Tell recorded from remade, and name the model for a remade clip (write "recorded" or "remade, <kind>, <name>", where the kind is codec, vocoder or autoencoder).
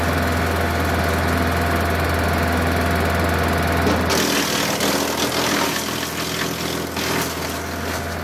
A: recorded